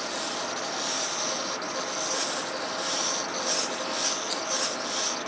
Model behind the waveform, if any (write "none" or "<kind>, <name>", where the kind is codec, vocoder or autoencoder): none